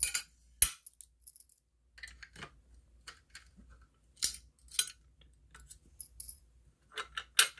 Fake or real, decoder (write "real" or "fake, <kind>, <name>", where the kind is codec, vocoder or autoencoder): real